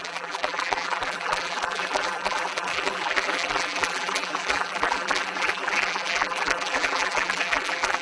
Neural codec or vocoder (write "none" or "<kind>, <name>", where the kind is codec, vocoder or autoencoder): vocoder, BigVGAN v2